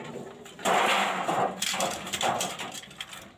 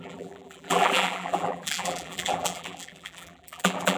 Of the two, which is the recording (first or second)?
first